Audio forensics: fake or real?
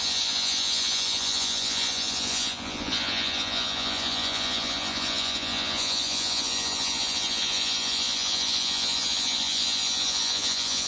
fake